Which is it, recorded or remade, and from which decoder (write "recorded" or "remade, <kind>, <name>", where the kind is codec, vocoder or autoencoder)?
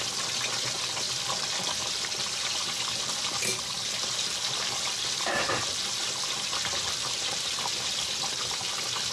remade, vocoder, BigVGAN v2